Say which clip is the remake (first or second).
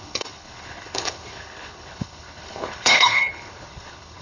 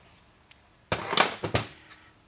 first